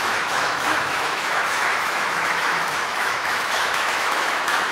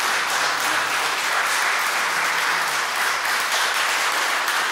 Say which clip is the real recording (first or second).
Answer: second